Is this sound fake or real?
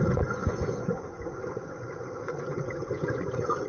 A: fake